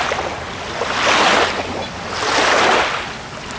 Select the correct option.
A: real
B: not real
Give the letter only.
A